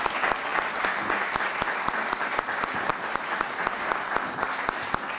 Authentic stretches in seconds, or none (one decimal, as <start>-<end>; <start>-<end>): 0.0-5.2